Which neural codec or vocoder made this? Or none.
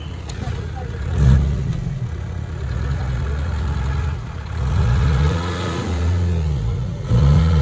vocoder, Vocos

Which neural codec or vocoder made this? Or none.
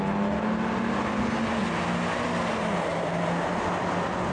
none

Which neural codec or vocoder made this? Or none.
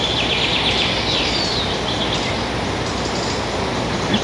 none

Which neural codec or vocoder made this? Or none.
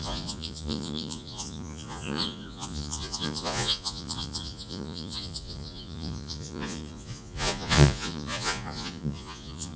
vocoder, Vocos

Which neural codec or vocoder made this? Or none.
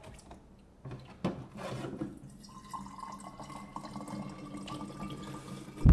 none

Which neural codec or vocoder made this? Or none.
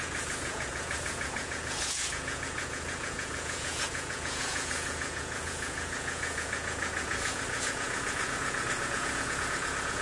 vocoder, Vocos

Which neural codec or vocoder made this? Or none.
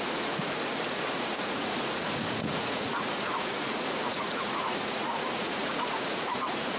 vocoder, Vocos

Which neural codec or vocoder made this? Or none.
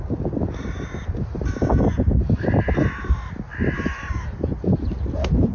none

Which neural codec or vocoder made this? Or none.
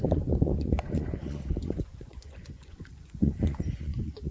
vocoder, Vocos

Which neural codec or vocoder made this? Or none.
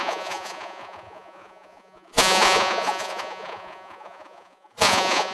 vocoder, Vocos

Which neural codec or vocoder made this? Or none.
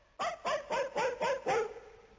none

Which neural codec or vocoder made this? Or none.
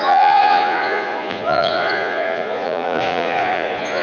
vocoder, Vocos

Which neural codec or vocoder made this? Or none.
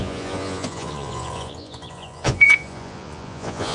vocoder, Vocos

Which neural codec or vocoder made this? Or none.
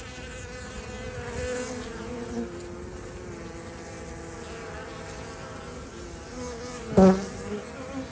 none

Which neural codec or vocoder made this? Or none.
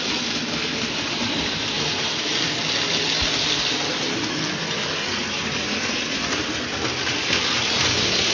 none